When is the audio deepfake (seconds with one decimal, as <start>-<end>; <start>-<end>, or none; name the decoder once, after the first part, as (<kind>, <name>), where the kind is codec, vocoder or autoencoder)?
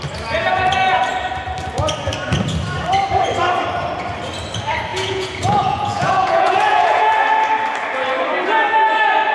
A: 4.9-7.1 (vocoder, Vocos)